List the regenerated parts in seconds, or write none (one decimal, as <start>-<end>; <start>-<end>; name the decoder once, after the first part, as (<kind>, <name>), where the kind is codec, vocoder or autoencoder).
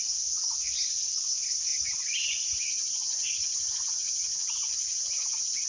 none